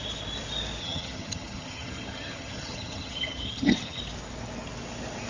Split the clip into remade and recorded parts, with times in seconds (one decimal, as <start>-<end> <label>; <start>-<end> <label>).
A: 0.0-0.8 recorded; 0.8-4.0 remade; 4.0-5.3 recorded